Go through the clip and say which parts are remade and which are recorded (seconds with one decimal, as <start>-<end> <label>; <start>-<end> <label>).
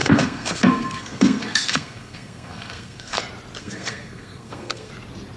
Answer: 0.0-3.2 remade; 3.2-3.6 recorded; 3.6-4.9 remade; 4.9-5.4 recorded